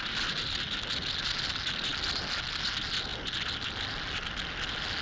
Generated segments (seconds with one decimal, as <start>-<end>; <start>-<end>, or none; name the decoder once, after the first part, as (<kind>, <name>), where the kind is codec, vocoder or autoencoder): none

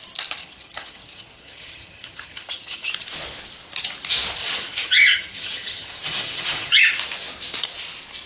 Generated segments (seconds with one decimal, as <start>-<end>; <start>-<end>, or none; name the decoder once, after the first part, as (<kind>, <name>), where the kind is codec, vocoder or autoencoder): 0.4-2.9 (vocoder, HiFi-GAN); 4.4-6.8